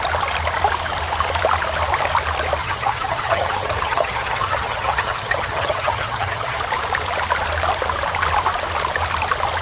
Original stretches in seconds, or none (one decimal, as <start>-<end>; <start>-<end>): 0.0-2.6; 6.6-9.6